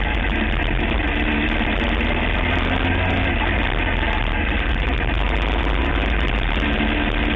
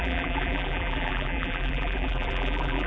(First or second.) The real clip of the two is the first